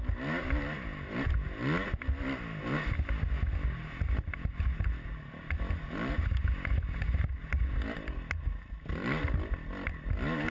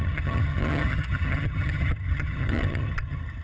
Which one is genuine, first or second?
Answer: first